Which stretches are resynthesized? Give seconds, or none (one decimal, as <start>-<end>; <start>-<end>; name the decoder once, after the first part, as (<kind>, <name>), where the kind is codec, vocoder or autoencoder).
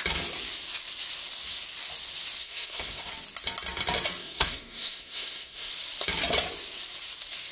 2.4-3.1 (codec, SNAC); 4.2-5.7